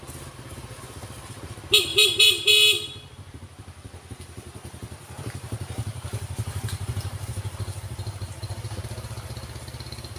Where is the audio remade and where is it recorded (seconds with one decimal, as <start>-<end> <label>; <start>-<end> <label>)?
0.0-1.9 recorded; 1.9-2.5 remade; 2.5-5.9 recorded; 5.9-8.5 remade; 8.5-10.2 recorded